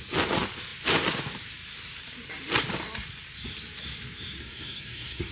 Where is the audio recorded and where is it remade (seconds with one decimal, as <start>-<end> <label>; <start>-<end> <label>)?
0.0-4.4 recorded; 4.4-5.3 remade